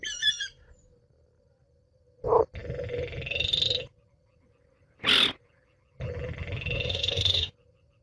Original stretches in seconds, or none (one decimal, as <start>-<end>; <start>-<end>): 0.0-6.9; 7.5-8.0